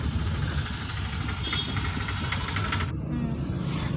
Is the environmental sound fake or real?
real